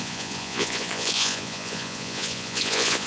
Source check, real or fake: fake